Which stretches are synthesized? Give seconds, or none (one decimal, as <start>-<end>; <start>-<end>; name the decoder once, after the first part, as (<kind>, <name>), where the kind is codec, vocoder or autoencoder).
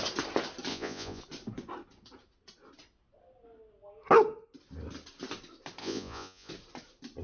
0.7-1.2 (vocoder, Vocos); 5.8-6.5